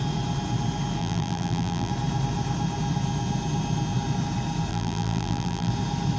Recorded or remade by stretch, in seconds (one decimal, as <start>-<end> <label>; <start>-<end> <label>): 0.0-1.0 recorded; 1.0-1.9 remade; 1.9-4.7 recorded; 4.7-5.7 remade; 5.7-6.2 recorded